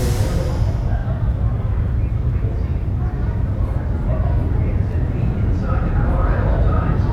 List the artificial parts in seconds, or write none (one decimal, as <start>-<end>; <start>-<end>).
1.0-1.7